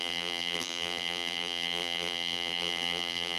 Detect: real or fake fake